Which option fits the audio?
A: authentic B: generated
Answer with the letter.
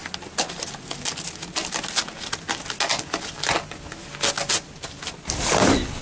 A